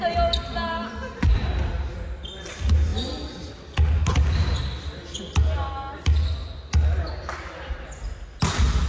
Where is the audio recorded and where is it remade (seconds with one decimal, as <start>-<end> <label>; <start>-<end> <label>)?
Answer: 0.0-1.0 recorded; 1.0-1.7 remade; 1.7-8.9 recorded